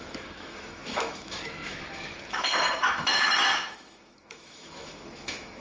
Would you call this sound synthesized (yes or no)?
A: yes